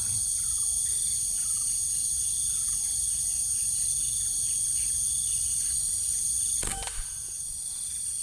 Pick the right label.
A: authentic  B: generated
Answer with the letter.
B